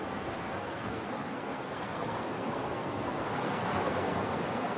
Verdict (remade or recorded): remade